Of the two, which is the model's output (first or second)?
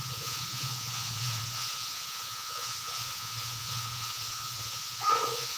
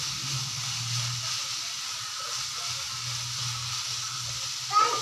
first